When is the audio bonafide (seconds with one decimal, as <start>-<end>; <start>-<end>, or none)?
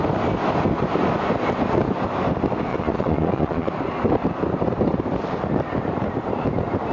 0.0-2.7; 3.7-6.9